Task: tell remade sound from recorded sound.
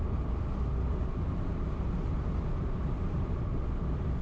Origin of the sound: recorded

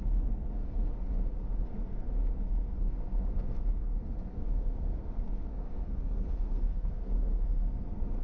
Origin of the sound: remade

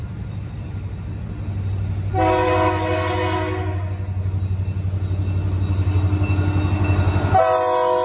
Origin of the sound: recorded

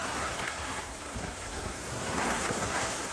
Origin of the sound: remade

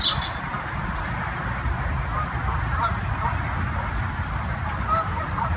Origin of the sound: recorded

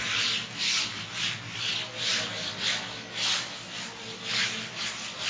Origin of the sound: recorded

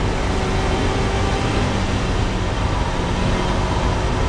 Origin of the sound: recorded